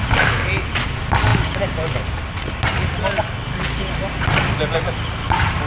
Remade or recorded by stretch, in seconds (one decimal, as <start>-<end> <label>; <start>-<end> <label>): 0.0-5.7 recorded